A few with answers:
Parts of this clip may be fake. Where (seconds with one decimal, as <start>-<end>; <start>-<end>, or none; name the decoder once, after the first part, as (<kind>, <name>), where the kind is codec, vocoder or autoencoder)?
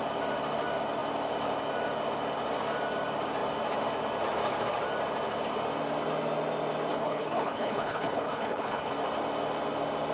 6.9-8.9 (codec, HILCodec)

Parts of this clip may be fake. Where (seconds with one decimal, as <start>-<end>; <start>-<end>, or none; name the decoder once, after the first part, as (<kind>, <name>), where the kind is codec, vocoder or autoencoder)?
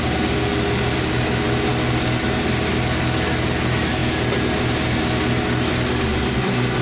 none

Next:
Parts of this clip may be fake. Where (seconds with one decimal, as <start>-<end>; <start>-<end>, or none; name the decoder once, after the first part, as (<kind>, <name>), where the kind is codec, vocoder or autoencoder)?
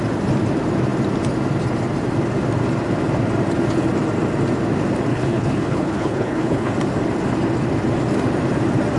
5.1-6.7 (codec, HILCodec)